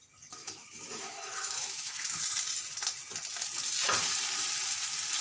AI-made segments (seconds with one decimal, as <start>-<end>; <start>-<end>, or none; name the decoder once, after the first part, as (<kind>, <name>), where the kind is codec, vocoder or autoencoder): 0.4-2.2 (autoencoder, DAC-VAE)